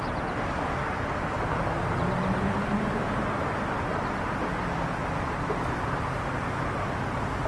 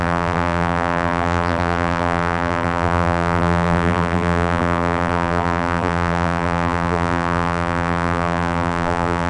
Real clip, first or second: first